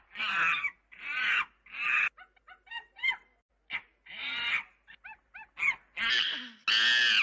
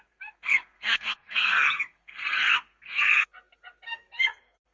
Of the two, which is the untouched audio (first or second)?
first